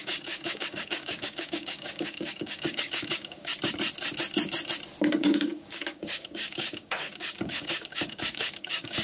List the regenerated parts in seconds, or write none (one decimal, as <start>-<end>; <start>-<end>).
0.0-3.5; 5.1-9.0